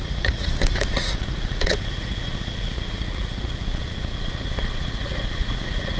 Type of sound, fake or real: fake